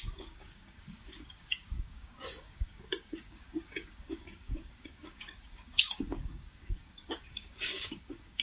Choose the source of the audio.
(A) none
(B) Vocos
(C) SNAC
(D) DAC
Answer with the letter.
D